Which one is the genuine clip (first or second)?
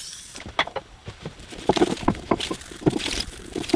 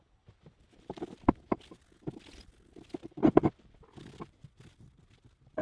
second